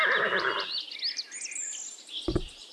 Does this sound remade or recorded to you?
recorded